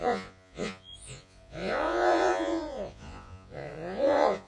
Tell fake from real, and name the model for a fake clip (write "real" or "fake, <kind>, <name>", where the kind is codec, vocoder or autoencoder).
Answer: fake, vocoder, Vocos